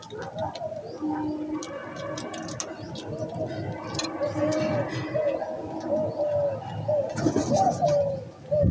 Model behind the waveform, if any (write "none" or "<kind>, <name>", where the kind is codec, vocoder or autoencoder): none